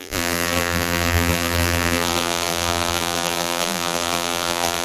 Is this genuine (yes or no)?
no